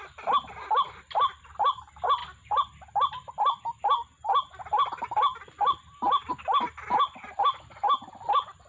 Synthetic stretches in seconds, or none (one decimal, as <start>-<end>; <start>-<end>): none